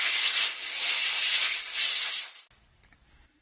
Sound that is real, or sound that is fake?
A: real